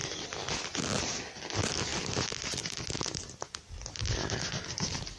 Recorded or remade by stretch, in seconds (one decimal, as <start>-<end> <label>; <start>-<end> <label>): 0.0-1.9 recorded; 1.9-5.2 remade